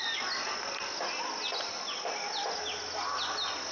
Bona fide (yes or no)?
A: yes